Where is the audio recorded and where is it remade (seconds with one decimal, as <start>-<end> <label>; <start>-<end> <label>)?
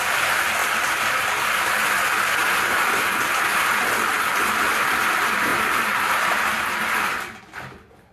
0.0-0.6 recorded; 0.6-3.4 remade; 3.4-5.5 recorded; 5.5-7.4 remade; 7.4-8.1 recorded